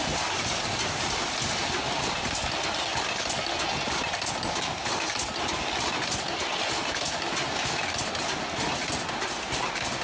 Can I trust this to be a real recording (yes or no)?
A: yes